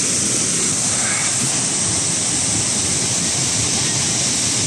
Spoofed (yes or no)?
no